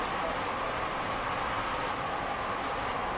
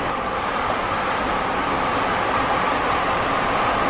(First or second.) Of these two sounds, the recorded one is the first